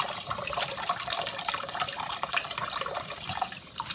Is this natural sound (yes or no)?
yes